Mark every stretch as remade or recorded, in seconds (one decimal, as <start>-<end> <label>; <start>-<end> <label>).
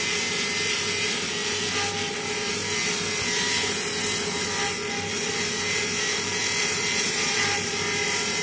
0.0-6.6 recorded; 6.6-7.8 remade; 7.8-8.4 recorded